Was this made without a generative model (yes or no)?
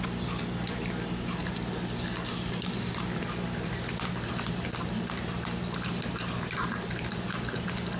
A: yes